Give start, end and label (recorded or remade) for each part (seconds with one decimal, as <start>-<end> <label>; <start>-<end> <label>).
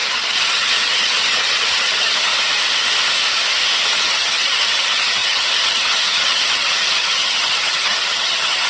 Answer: 0.0-2.3 remade; 2.3-4.0 recorded; 4.0-8.7 remade